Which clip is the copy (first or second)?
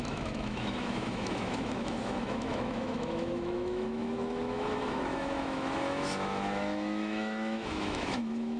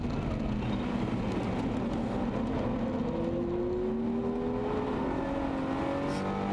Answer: first